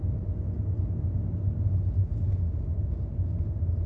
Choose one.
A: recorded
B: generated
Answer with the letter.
A